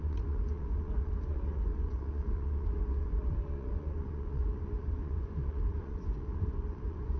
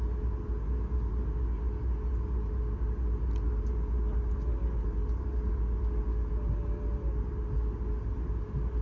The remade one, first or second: first